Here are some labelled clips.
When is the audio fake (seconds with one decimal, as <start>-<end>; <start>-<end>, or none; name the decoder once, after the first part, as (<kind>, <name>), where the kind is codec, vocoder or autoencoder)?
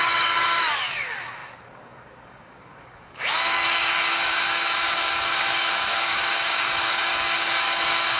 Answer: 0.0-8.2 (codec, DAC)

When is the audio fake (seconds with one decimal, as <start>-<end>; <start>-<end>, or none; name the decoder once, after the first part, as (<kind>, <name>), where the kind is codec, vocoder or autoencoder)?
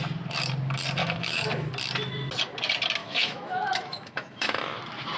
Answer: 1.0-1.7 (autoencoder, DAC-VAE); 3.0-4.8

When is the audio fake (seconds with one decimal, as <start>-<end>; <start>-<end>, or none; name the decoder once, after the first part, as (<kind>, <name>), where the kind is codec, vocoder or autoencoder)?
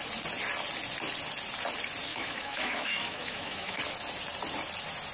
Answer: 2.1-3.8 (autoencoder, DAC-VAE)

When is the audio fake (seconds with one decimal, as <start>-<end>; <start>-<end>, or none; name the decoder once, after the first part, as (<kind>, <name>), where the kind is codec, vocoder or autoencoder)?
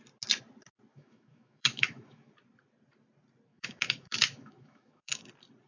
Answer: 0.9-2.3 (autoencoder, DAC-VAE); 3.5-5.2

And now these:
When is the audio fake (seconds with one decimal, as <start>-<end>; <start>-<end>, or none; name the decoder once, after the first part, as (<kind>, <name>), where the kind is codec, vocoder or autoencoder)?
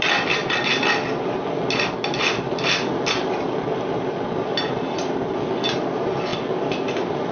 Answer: 0.0-0.4 (vocoder, BigVGAN v2); 4.8-7.3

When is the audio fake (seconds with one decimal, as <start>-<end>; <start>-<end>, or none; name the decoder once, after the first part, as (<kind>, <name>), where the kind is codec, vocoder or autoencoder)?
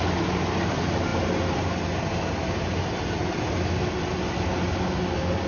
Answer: none